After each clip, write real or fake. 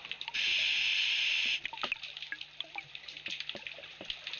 real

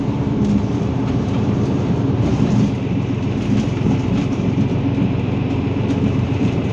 fake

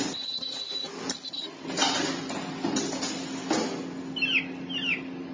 real